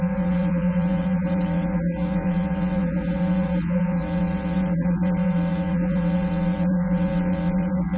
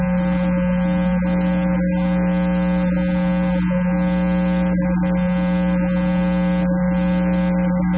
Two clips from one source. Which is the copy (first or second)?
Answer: first